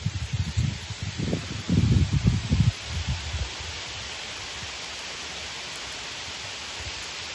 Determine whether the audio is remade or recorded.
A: recorded